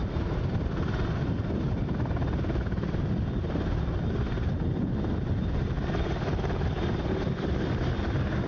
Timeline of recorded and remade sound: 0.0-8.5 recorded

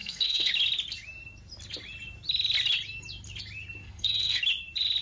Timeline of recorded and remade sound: 0.0-0.5 remade; 0.5-3.8 recorded; 3.8-4.4 remade; 4.4-5.0 recorded

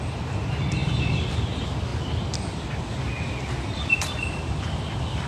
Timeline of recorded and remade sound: 0.0-5.3 recorded

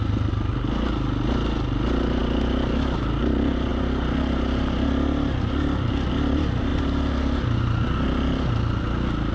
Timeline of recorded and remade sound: 0.0-9.3 recorded

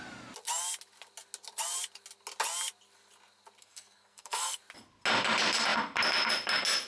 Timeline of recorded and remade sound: 0.0-3.6 recorded; 3.6-4.6 remade; 4.6-6.9 recorded

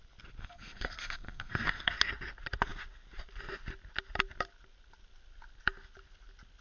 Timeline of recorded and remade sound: 0.0-0.4 recorded; 0.4-1.9 remade; 1.9-6.6 recorded

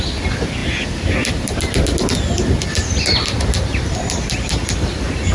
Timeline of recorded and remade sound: 0.0-5.3 recorded

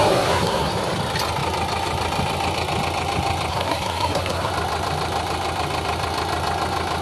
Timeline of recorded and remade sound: 0.0-0.7 remade; 0.7-3.5 recorded; 3.5-4.5 remade; 4.5-7.0 recorded